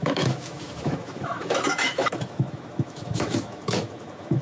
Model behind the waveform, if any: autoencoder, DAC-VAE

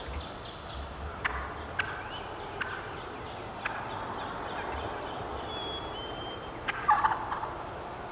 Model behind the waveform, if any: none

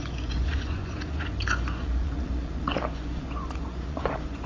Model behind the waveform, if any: vocoder, Vocos